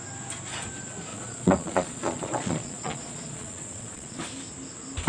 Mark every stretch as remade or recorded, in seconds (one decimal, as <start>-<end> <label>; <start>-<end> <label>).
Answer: 0.0-1.1 recorded; 1.1-4.2 remade; 4.2-5.1 recorded